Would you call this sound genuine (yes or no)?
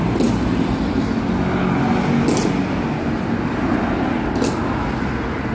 yes